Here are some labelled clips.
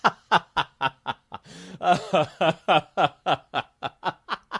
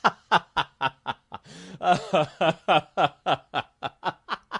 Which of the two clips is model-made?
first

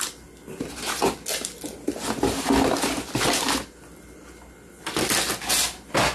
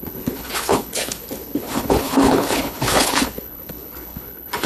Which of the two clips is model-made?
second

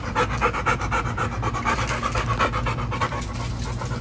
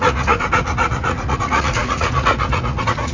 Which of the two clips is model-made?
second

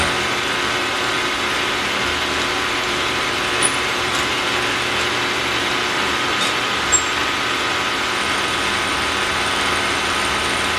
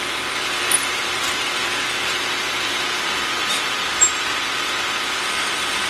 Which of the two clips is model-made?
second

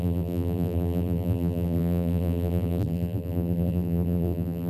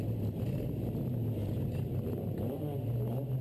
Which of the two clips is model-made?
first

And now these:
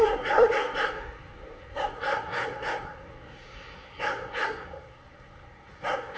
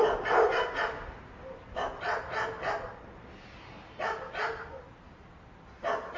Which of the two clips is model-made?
first